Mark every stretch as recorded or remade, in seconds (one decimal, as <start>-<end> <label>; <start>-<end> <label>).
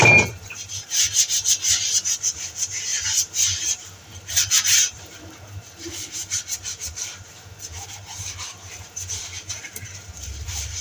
0.0-10.8 remade